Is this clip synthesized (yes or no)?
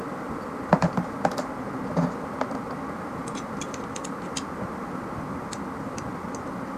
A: no